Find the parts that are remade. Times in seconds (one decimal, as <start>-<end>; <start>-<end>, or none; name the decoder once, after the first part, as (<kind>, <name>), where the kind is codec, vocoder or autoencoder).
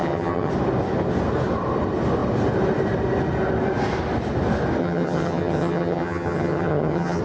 0.0-0.5 (vocoder, HiFi-GAN); 4.8-7.2